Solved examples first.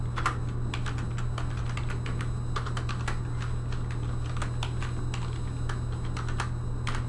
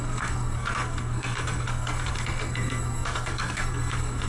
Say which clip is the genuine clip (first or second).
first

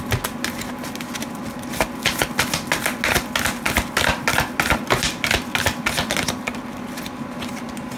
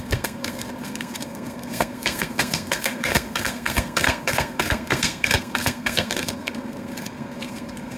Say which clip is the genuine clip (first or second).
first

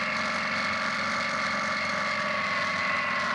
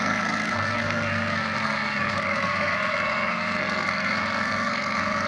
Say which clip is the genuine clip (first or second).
first